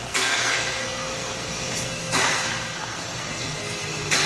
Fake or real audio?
fake